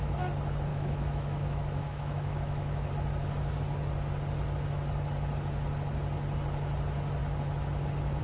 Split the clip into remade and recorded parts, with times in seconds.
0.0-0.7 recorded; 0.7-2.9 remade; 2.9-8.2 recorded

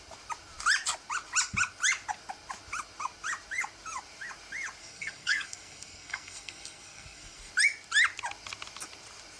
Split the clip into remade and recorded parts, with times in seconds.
0.0-4.8 recorded; 4.8-7.5 remade; 7.5-9.4 recorded